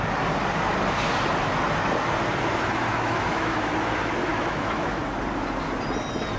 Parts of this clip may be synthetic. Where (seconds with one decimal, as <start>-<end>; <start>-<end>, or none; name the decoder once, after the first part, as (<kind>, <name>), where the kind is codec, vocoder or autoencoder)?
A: 2.9-3.6 (autoencoder, DAC-VAE); 4.3-5.0